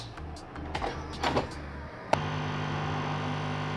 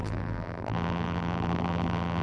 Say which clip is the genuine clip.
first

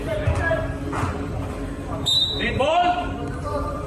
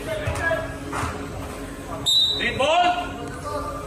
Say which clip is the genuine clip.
second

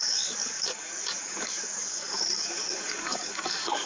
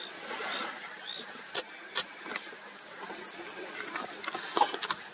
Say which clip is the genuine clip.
second